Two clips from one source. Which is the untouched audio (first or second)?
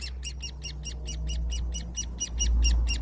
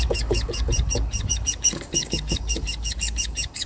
first